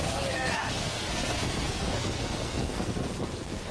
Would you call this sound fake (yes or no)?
yes